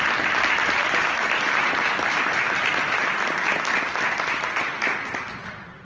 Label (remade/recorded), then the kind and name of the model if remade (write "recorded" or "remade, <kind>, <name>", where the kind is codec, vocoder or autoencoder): recorded